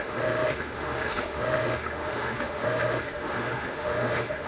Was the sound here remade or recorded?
remade